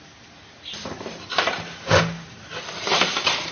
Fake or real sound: fake